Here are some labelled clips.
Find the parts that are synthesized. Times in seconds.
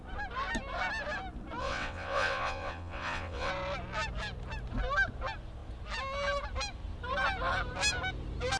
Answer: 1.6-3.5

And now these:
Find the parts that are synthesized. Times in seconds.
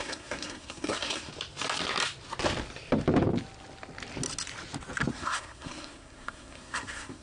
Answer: 0.0-1.3; 5.1-7.2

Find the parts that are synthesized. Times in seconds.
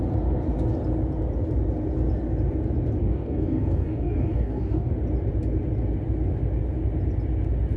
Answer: 3.0-4.9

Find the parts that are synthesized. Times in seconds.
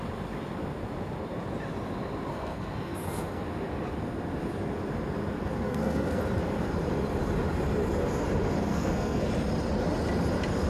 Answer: 2.3-3.4; 5.4-6.2; 8.7-9.3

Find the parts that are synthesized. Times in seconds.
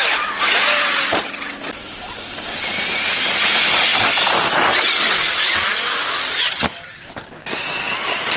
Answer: none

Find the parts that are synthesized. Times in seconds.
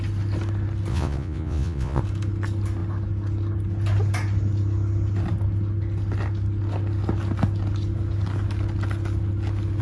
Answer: 0.9-2.0